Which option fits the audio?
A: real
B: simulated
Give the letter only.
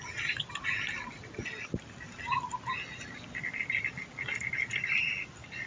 A